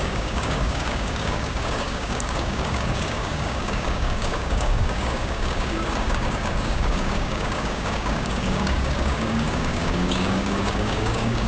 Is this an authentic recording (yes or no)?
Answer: no